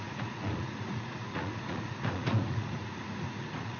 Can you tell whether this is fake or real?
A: fake